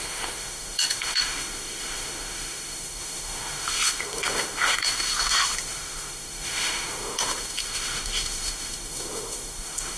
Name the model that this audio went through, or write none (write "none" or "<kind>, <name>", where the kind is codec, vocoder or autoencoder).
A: autoencoder, DAC-VAE